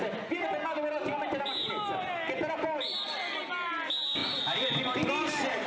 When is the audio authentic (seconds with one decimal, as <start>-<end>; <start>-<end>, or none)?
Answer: 0.0-5.7